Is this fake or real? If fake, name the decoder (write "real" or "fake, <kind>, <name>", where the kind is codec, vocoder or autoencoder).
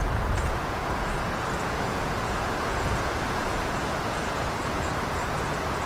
fake, vocoder, Vocos